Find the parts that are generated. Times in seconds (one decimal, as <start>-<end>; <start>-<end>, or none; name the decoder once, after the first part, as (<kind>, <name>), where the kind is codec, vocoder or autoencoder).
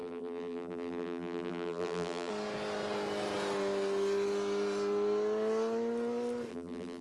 0.0-2.3 (vocoder, BigVGAN v2); 6.5-7.0